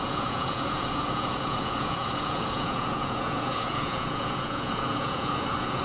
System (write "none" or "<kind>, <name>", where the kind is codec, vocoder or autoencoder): vocoder, Vocos